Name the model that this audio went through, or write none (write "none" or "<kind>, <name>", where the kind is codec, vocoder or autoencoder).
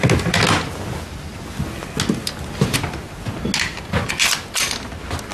none